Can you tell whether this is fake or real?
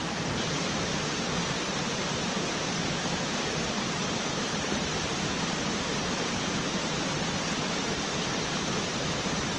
fake